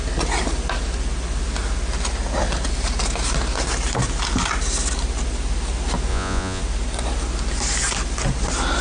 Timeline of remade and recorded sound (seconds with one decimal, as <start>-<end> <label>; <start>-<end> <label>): 0.0-6.1 recorded; 6.1-6.6 remade; 6.6-8.8 recorded